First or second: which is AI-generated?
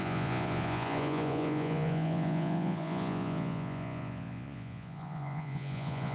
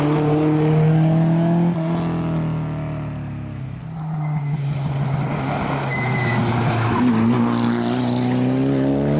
first